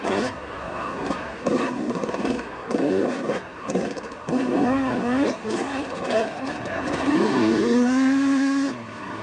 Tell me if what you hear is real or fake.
fake